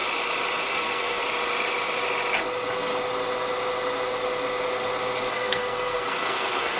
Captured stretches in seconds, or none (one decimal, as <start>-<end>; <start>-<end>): 0.0-0.7; 1.2-5.3